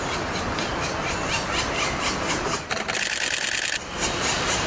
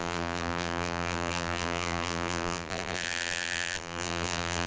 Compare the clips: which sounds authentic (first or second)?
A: first